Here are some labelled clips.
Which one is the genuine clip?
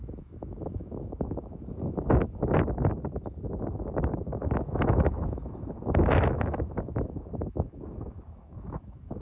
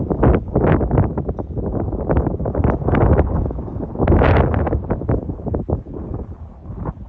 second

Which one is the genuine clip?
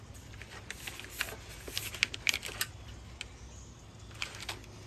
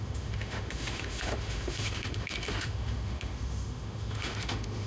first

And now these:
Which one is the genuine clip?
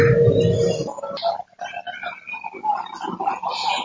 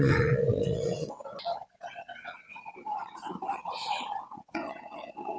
first